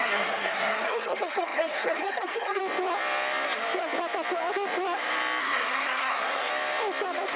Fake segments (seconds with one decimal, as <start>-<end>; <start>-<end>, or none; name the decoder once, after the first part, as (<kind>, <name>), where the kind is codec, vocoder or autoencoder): 0.0-2.6 (codec, SNAC); 5.4-6.5